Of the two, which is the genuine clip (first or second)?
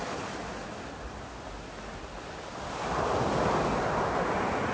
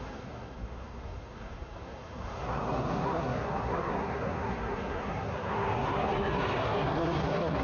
first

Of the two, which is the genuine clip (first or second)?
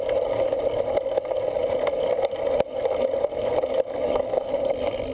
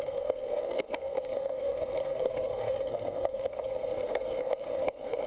first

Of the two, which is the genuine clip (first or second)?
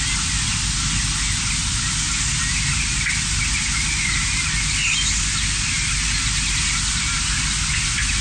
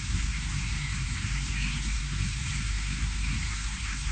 first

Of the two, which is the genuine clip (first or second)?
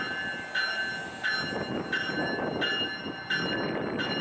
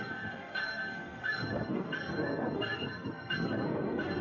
first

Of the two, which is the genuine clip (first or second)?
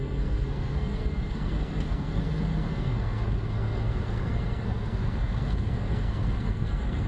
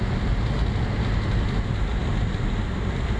second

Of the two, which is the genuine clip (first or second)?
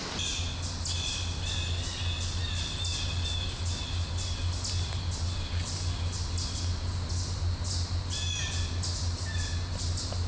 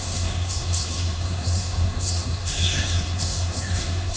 first